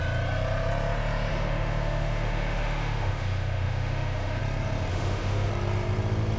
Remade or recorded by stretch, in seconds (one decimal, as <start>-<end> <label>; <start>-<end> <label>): 0.0-1.3 recorded; 1.3-4.4 remade; 4.4-4.9 recorded; 4.9-5.5 remade; 5.5-6.4 recorded